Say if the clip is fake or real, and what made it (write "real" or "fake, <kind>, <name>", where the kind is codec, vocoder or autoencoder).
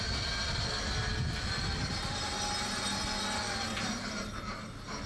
real